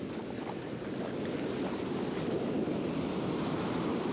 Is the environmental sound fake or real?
real